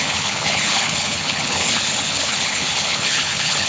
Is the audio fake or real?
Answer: fake